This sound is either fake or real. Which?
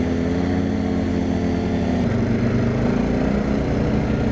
real